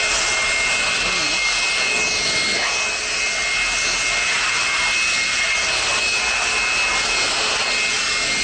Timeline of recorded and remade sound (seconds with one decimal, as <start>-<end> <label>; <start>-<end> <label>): 0.0-8.4 recorded